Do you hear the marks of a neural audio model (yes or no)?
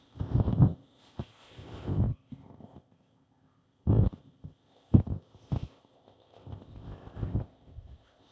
yes